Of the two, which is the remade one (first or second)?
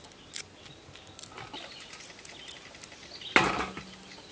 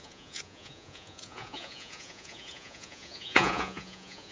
second